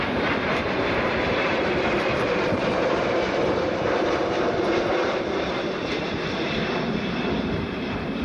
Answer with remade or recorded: remade